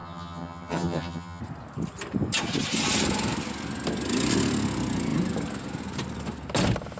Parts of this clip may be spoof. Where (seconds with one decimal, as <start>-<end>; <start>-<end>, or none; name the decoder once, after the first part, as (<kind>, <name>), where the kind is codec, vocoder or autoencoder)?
0.0-1.4 (vocoder, HiFi-GAN)